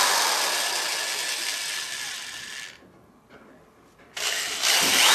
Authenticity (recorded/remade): recorded